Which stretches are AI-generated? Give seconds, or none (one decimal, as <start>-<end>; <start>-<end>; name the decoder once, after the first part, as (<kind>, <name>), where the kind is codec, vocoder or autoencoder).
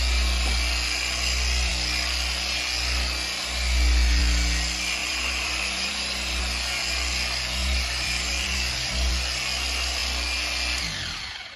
5.0-6.4 (vocoder, BigVGAN v2); 7.6-9.1